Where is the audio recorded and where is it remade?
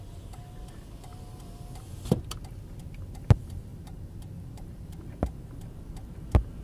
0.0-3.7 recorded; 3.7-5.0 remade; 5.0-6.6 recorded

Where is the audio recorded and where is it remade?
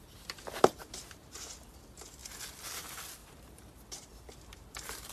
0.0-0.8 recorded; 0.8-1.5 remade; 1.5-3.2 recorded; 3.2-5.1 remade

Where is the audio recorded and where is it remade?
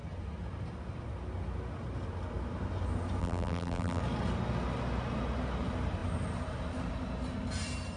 0.0-3.2 recorded; 3.2-4.0 remade; 4.0-8.0 recorded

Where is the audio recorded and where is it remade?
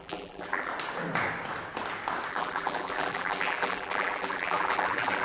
0.0-0.7 remade; 0.7-2.3 recorded; 2.3-5.2 remade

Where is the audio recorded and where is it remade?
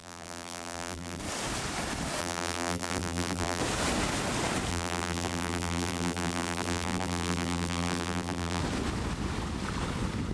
0.0-1.2 remade; 1.2-2.2 recorded; 2.2-3.6 remade; 3.6-4.7 recorded; 4.7-8.6 remade; 8.6-10.3 recorded